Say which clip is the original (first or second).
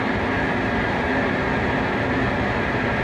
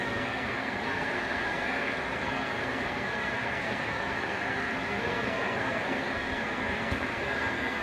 first